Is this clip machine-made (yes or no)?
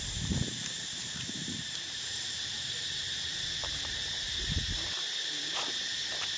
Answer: yes